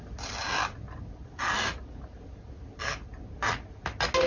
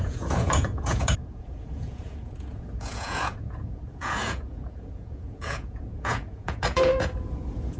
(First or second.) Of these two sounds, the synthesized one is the second